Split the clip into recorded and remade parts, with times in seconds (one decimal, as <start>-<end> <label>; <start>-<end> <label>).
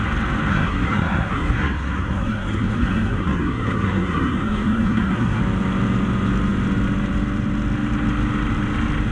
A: 0.0-0.5 recorded; 0.5-5.4 remade; 5.4-9.1 recorded